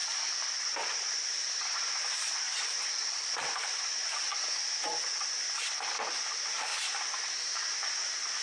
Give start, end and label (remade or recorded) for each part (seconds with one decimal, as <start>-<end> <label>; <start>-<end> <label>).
0.0-4.3 remade; 4.3-6.3 recorded; 6.3-6.7 remade; 6.7-7.2 recorded; 7.2-8.4 remade